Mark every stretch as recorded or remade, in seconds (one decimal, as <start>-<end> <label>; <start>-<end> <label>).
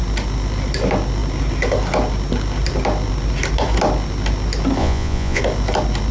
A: 0.0-4.8 recorded; 4.8-5.4 remade; 5.4-6.1 recorded